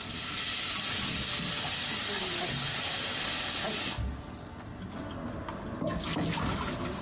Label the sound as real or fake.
real